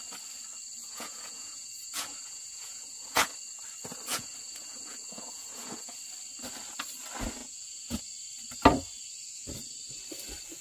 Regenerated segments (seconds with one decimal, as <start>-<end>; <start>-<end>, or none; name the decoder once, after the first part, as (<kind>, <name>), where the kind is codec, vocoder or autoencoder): 0.8-3.3 (vocoder, Vocos); 4.1-6.0; 7.4-8.0